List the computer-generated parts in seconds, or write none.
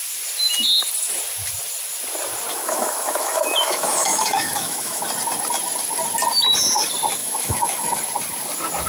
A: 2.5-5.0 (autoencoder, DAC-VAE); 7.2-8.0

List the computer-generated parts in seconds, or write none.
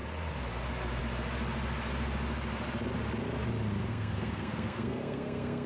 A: 3.9-5.7 (codec, SNAC)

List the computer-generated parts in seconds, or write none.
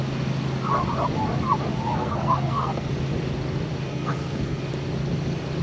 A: 1.9-2.9 (codec, SNAC); 3.9-4.6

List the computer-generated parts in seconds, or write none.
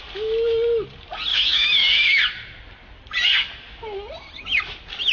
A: 1.3-2.2 (autoencoder, DAC-VAE)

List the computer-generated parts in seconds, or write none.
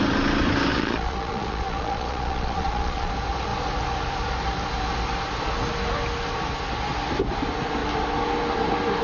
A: 0.7-3.1 (vocoder, Vocos)